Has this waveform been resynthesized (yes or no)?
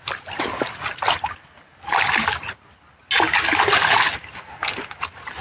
no